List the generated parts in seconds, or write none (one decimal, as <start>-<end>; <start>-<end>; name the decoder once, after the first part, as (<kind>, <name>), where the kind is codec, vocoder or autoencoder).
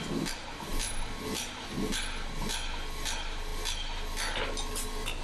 none